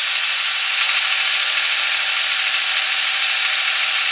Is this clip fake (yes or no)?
no